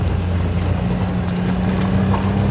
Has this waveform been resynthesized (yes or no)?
no